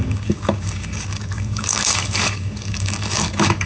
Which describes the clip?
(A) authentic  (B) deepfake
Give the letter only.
B